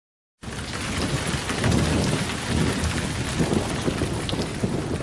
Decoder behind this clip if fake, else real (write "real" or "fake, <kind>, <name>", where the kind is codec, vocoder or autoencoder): real